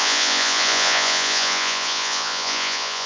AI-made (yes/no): yes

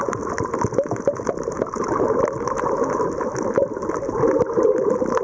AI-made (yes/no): no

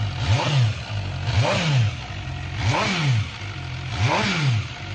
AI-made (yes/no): no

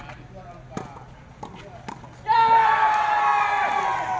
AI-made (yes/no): no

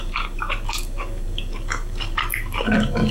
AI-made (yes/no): yes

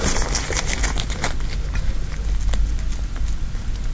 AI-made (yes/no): no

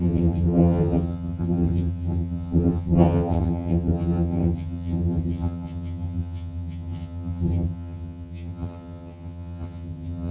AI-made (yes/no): yes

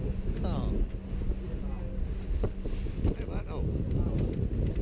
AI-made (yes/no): no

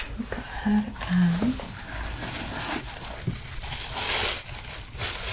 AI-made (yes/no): no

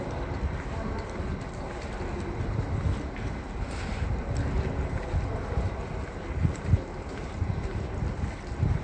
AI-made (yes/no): no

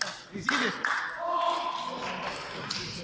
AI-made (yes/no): no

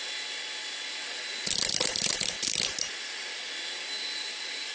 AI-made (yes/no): no